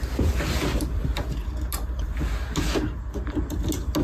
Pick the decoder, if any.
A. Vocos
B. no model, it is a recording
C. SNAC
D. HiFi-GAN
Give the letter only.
B